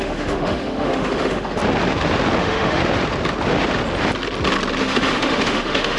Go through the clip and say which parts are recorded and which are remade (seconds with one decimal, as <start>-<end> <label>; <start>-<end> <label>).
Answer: 0.0-1.6 remade; 1.6-2.4 recorded; 2.4-2.8 remade; 2.8-4.8 recorded; 4.8-6.0 remade